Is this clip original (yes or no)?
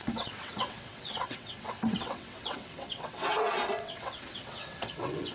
no